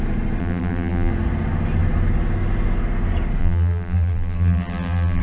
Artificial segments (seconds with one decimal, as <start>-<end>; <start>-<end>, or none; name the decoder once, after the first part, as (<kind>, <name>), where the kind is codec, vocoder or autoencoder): 0.4-1.1 (vocoder, BigVGAN v2); 3.4-5.2